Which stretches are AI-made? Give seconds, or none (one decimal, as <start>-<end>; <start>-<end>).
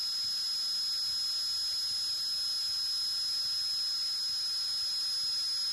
none